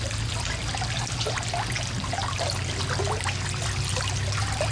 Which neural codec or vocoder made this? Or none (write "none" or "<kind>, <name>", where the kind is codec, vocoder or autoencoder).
none